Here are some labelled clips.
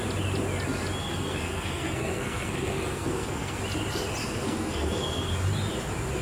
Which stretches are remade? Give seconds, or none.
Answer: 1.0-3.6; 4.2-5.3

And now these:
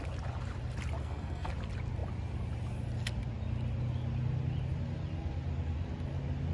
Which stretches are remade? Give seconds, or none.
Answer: 1.0-1.5

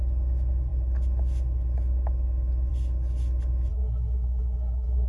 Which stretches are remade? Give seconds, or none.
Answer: 3.7-5.1

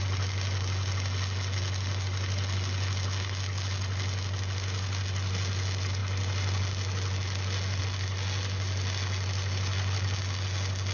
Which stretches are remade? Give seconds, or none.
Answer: none

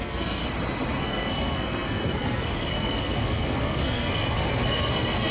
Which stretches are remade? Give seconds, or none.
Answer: 0.0-0.4; 1.0-5.3

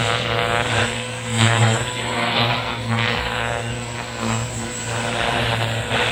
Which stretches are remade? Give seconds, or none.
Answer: 0.8-4.5

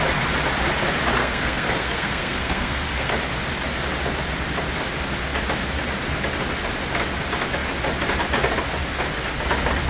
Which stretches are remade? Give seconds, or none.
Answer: 1.2-3.1